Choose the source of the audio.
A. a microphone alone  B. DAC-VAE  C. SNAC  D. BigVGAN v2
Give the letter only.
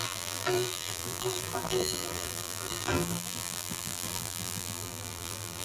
D